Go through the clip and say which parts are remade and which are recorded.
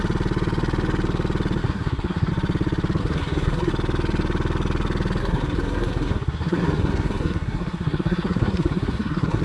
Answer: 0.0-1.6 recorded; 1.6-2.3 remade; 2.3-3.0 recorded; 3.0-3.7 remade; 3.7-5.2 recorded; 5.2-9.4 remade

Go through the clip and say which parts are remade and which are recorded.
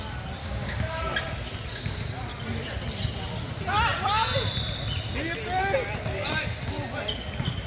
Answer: 0.0-0.4 recorded; 0.4-1.0 remade; 1.0-7.7 recorded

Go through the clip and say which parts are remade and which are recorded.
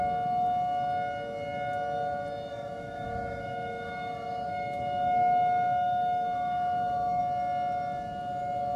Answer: 0.0-2.5 recorded; 2.5-7.2 remade; 7.2-8.8 recorded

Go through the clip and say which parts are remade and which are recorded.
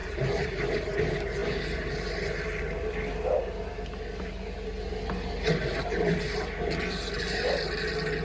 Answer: 0.0-0.5 remade; 0.5-8.2 recorded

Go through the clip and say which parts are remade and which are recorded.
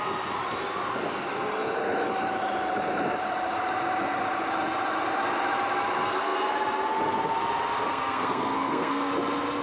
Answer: 0.0-7.9 recorded; 7.9-9.1 remade; 9.1-9.6 recorded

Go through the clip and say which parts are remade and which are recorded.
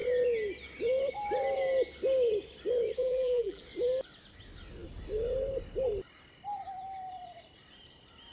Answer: 0.0-3.0 recorded; 3.0-3.6 remade; 3.6-8.3 recorded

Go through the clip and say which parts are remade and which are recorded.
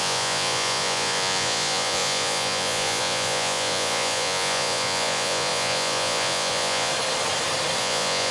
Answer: 0.0-6.9 remade; 6.9-7.8 recorded; 7.8-8.3 remade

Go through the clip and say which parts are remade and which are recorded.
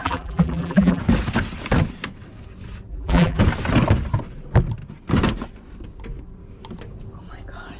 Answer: 0.0-1.0 remade; 1.0-2.9 recorded; 2.9-3.4 remade; 3.4-7.8 recorded